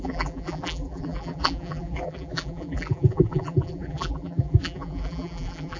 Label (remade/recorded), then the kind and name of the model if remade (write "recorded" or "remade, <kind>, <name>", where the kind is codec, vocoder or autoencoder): remade, vocoder, BigVGAN v2